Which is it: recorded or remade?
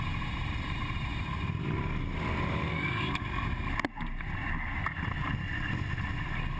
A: recorded